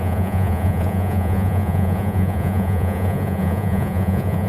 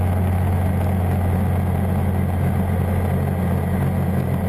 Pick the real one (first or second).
second